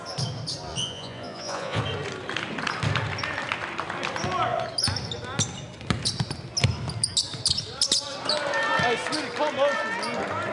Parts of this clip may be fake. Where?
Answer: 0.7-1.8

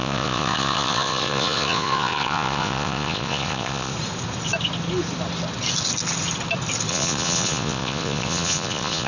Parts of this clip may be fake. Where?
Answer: 0.0-3.9; 6.9-9.1

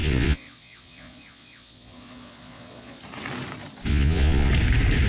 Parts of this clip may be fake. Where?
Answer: 0.0-3.0; 3.9-4.5

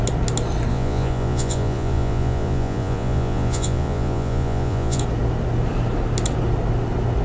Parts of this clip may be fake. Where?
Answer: 0.7-5.0

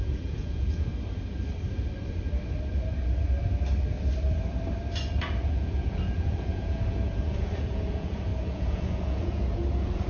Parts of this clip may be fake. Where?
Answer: 0.0-0.9; 5.4-10.1

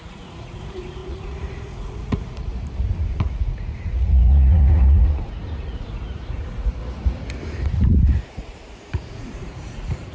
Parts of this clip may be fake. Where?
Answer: 0.0-2.5; 3.0-6.8; 7.8-10.1

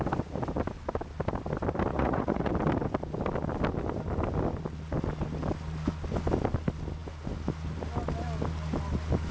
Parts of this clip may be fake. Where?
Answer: 1.9-2.5

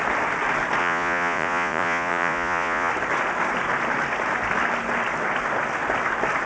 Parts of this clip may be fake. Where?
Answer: 0.8-2.9